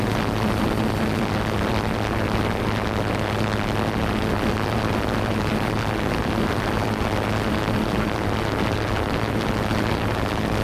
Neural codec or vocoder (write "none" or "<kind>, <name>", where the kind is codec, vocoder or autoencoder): none